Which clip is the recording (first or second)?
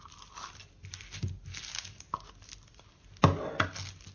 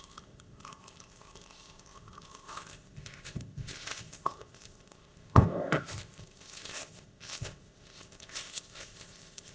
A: first